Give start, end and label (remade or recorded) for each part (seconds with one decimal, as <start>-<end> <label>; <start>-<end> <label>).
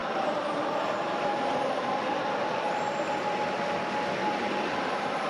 0.0-1.6 remade; 1.6-4.2 recorded; 4.2-5.3 remade